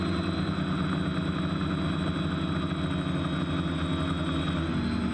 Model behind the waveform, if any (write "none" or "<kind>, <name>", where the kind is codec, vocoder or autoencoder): none